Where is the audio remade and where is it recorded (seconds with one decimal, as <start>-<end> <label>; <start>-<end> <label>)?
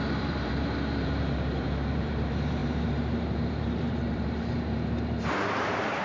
0.0-6.0 remade